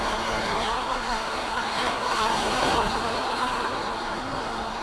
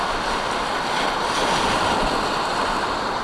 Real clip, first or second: second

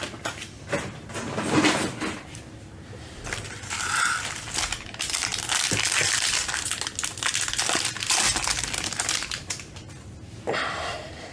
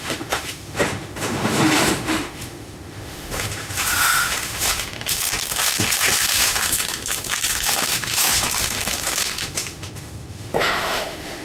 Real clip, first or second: first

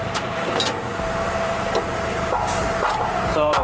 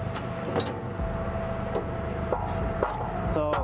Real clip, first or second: second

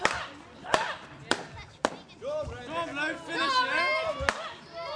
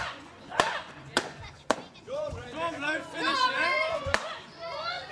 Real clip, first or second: first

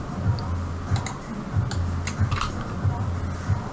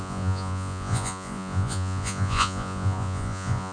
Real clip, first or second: first